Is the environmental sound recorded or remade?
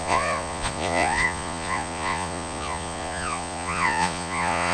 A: remade